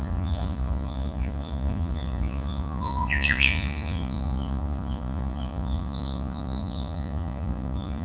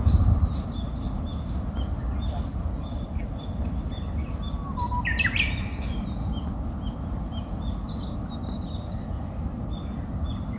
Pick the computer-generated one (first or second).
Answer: first